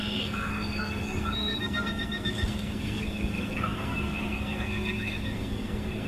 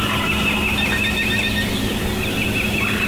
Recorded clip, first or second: second